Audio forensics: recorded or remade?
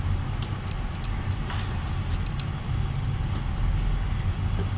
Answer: recorded